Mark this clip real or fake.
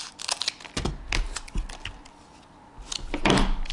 real